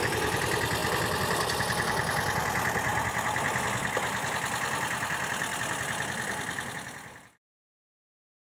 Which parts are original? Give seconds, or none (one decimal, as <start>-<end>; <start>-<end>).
0.0-8.6